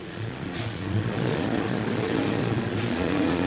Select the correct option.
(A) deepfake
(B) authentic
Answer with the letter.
A